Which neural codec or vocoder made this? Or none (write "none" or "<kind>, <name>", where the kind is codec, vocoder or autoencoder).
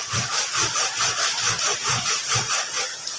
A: none